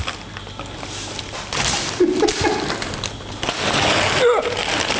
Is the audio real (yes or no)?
yes